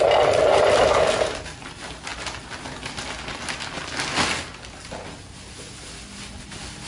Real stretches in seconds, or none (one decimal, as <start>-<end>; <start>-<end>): 0.0-6.9